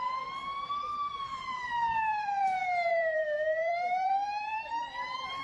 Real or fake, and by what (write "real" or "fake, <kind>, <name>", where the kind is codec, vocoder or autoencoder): fake, vocoder, BigVGAN v2